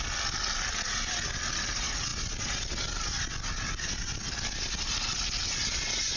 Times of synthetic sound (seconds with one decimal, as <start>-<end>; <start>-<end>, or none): none